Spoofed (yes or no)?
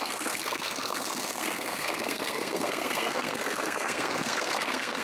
yes